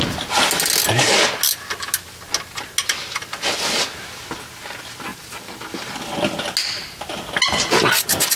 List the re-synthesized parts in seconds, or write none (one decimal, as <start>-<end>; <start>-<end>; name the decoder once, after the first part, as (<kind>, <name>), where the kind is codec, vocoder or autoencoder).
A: 5.1-5.9 (vocoder, BigVGAN v2)